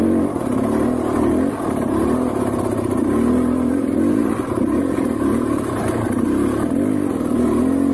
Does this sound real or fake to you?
real